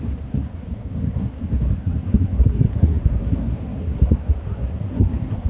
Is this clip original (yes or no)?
no